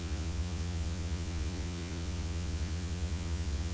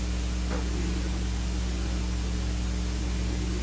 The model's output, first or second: first